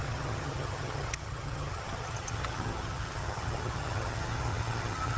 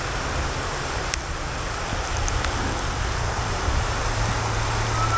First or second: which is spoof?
first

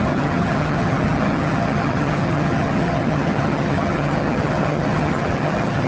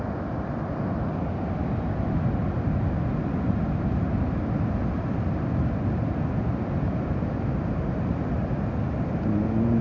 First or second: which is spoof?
first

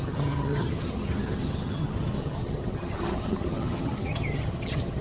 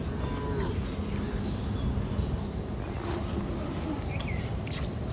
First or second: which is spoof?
first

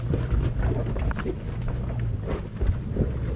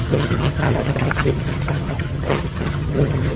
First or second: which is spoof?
second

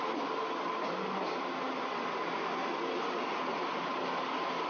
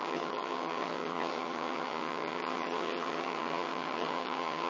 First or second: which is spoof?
second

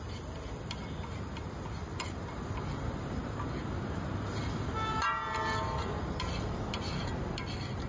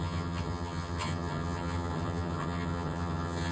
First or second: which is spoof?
second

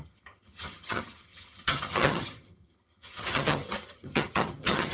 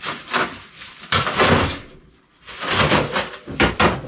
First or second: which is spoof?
first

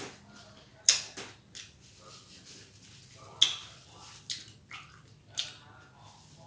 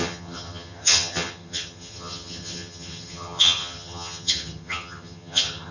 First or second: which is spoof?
second